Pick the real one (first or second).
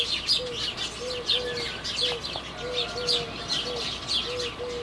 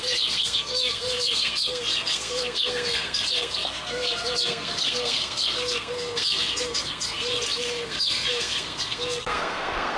first